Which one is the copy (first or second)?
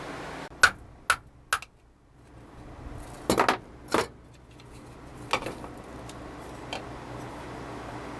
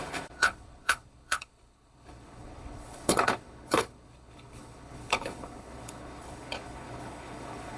second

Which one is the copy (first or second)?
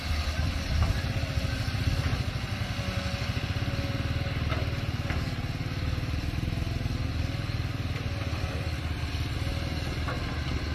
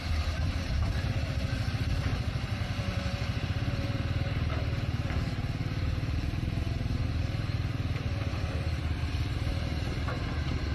second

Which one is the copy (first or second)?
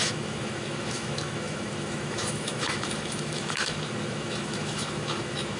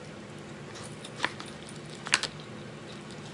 first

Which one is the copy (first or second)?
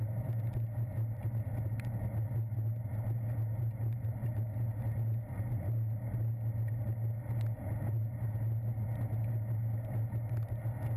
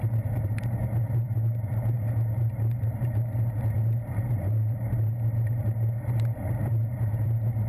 second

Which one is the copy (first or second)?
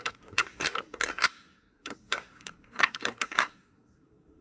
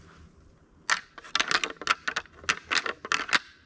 first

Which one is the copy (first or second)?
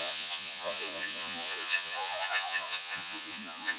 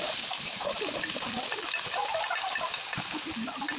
first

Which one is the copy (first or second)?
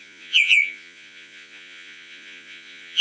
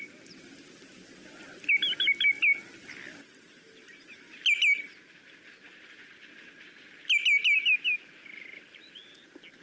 first